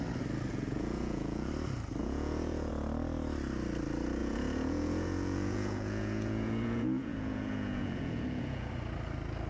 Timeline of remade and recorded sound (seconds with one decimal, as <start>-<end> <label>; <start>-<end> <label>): 0.0-0.5 recorded; 0.5-1.5 remade; 1.5-2.0 recorded; 2.0-2.7 remade; 2.7-4.2 recorded; 4.2-8.7 remade; 8.7-9.5 recorded